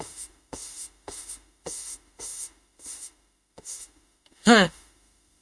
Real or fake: fake